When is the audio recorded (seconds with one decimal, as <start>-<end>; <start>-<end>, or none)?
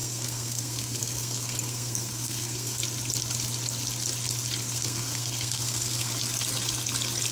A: 2.8-4.6; 6.1-7.3